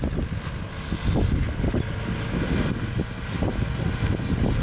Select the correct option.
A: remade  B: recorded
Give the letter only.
B